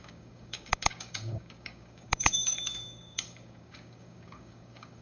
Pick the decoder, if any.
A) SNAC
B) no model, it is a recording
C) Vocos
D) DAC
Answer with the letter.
D